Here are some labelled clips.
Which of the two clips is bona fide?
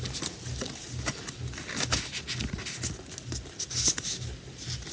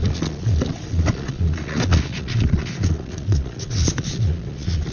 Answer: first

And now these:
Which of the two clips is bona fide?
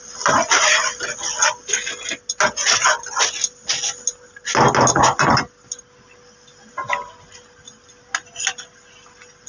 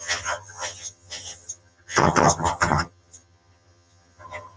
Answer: first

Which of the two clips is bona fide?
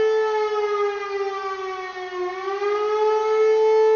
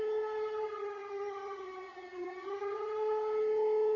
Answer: first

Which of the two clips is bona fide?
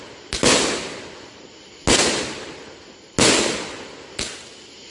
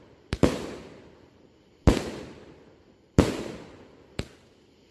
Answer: first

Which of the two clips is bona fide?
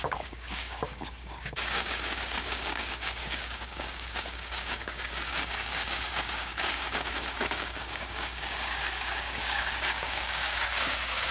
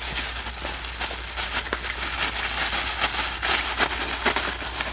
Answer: second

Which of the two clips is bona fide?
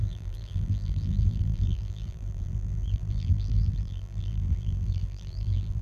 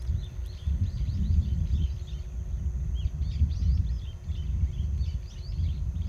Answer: second